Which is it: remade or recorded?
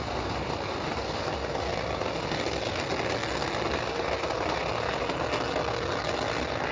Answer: recorded